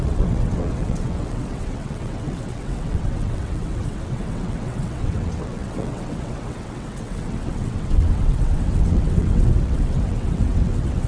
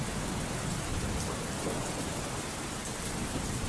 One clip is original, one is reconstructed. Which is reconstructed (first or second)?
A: first